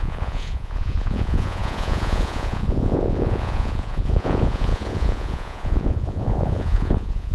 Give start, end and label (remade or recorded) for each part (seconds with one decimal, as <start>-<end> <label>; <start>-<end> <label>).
0.0-7.3 remade